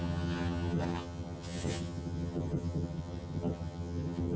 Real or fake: fake